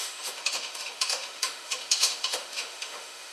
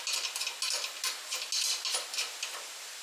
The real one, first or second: second